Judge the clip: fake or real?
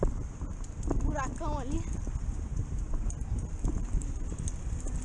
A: real